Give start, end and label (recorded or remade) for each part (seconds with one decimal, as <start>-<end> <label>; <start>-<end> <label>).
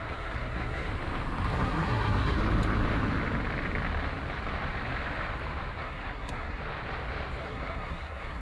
0.0-0.9 remade; 0.9-1.5 recorded; 1.5-2.4 remade; 2.4-5.8 recorded; 5.8-6.6 remade; 6.6-7.4 recorded; 7.4-8.4 remade